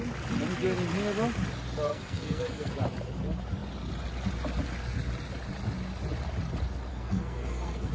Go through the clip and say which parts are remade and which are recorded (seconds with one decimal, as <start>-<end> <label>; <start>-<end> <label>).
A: 0.0-1.9 recorded; 1.9-2.7 remade; 2.7-6.9 recorded; 6.9-7.9 remade